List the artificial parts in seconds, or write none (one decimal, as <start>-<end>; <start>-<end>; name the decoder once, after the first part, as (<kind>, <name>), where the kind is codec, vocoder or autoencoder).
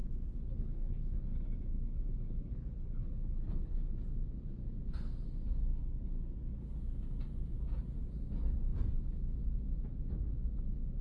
0.0-3.9 (codec, HILCodec); 5.6-6.7